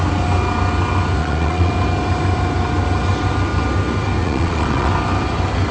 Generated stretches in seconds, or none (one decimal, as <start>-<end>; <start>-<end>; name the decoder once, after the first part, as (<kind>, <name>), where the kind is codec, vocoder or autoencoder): 1.2-1.7 (vocoder, Vocos); 4.2-4.9